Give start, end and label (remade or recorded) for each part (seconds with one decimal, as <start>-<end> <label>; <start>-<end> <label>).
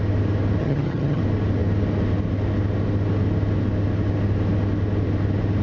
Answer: 0.0-0.6 recorded; 0.6-1.2 remade; 1.2-5.6 recorded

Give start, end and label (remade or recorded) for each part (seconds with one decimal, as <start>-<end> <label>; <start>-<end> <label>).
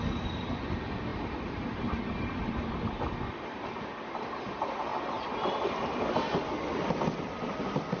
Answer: 0.0-8.0 recorded